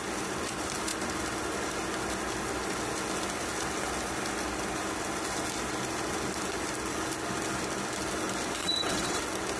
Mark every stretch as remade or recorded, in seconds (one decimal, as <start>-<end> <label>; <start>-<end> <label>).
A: 0.0-8.6 recorded; 8.6-9.2 remade; 9.2-9.6 recorded